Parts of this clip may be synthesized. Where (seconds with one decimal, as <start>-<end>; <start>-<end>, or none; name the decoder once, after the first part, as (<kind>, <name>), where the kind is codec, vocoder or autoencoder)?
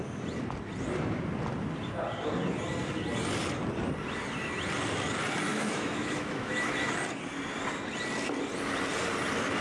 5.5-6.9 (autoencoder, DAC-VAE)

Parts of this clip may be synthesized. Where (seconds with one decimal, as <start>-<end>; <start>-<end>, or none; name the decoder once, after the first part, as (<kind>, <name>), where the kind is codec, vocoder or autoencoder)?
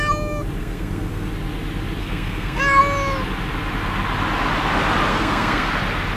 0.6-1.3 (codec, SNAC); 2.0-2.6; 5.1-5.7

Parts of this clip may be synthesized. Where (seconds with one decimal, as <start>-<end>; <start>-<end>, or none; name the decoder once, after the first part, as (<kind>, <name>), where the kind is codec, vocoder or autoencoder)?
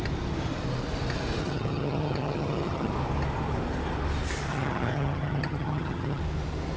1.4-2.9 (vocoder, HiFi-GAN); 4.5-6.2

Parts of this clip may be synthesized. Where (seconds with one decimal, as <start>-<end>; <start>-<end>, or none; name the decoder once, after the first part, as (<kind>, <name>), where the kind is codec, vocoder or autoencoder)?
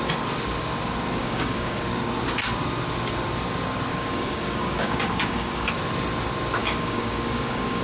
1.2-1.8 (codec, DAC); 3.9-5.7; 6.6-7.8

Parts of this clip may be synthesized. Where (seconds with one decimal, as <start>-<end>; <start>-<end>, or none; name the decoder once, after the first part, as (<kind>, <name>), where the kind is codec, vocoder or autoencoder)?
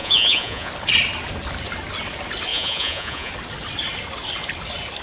0.0-0.7 (vocoder, Vocos); 2.5-3.3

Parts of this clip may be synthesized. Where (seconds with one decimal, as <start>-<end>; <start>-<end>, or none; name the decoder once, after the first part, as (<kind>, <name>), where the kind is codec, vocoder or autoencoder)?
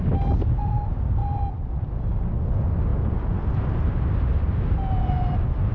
1.2-1.9 (vocoder, BigVGAN v2)